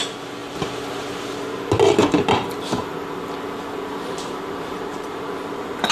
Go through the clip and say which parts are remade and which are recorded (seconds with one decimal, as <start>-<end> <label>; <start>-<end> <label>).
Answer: 0.0-3.9 recorded; 3.9-5.2 remade; 5.2-5.9 recorded